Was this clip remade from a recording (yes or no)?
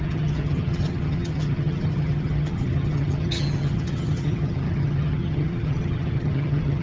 yes